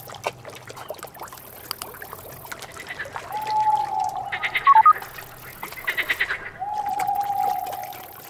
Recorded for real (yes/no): yes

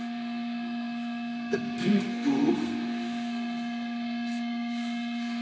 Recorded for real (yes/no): no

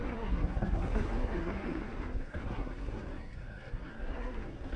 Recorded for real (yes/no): no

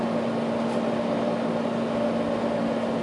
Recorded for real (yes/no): yes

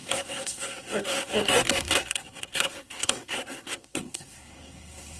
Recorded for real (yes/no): no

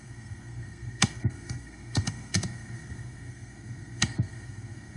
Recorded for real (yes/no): no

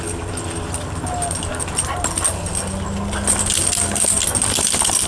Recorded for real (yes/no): yes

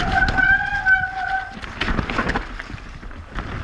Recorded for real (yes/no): yes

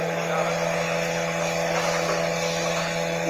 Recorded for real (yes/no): yes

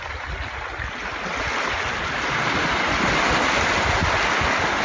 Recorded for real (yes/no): yes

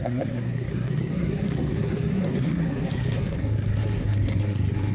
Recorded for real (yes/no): no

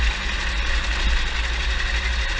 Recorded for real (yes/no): yes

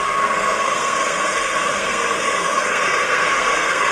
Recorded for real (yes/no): no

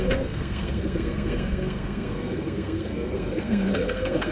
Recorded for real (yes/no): no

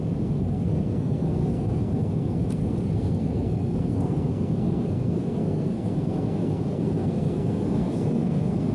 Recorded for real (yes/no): no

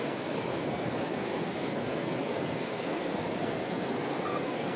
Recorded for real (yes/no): no